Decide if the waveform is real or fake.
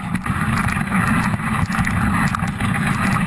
real